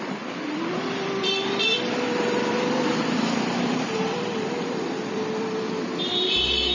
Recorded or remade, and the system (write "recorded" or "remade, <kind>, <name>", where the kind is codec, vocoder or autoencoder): remade, vocoder, BigVGAN v2